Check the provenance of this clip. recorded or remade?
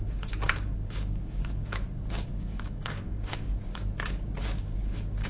remade